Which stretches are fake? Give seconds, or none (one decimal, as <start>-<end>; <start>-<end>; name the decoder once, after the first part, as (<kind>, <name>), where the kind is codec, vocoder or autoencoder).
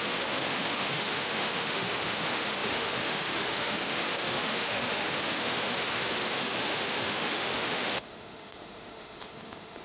0.0-9.8 (autoencoder, DAC-VAE)